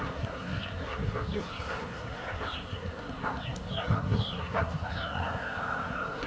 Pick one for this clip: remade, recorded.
remade